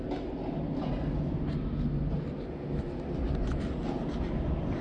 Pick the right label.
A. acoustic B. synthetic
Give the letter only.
A